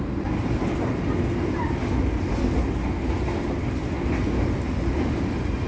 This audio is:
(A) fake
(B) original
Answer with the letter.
B